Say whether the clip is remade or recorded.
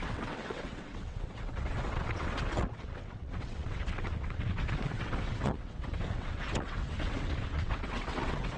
remade